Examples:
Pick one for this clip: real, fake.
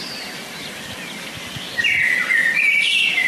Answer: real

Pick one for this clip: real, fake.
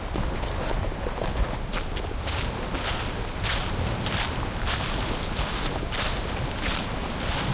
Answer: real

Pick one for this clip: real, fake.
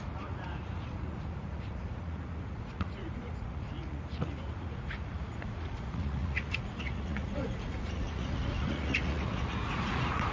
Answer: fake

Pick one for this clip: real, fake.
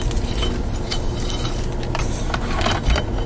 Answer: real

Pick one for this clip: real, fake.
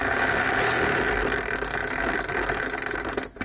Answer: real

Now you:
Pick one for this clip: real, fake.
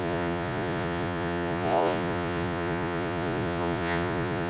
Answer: fake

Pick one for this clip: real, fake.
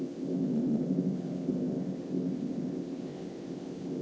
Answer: fake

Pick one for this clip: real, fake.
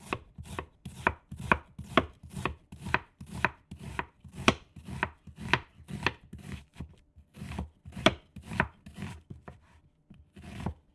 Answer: real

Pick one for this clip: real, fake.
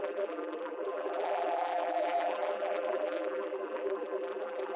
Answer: fake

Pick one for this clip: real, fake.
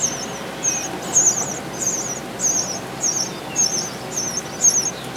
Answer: real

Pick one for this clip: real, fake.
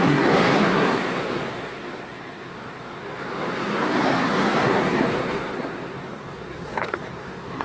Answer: fake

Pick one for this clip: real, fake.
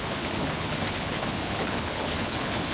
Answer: fake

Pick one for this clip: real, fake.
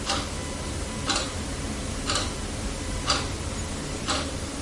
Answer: real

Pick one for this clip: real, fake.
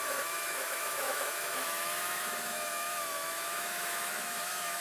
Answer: fake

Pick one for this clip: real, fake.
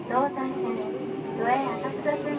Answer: real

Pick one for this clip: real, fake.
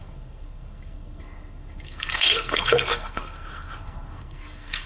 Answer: fake